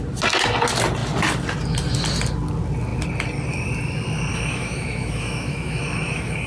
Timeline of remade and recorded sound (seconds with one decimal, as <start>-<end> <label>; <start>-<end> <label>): 0.0-4.3 recorded; 4.3-6.5 remade